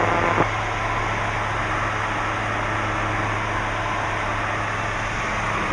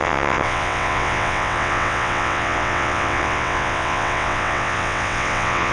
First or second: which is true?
first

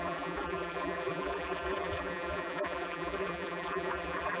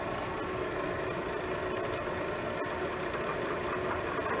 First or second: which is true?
second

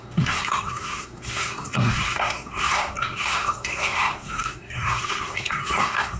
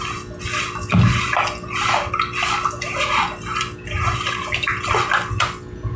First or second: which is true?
second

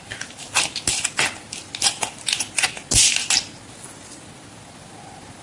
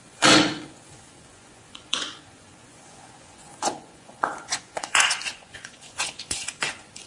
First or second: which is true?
first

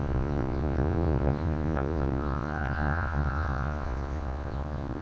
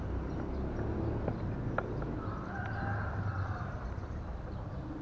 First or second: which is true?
second